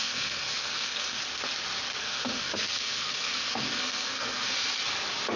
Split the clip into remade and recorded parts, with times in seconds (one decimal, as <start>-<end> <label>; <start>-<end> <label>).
0.0-1.2 remade; 1.2-2.0 recorded; 2.0-4.5 remade; 4.5-5.4 recorded